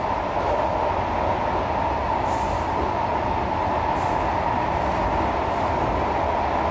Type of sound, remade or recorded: recorded